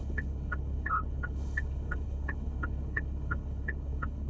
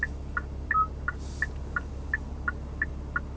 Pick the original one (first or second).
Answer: second